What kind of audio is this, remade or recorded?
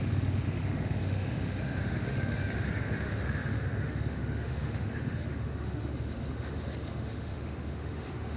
remade